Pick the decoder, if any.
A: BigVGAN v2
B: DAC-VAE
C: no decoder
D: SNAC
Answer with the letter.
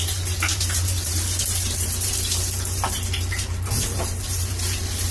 A